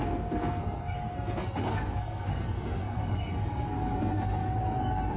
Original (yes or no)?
no